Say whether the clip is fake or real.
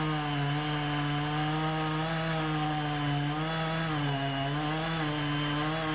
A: real